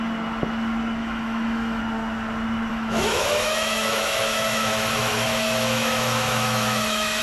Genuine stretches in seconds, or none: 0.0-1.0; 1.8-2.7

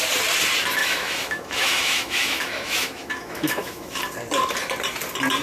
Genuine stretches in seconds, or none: 0.0-0.8; 4.0-5.4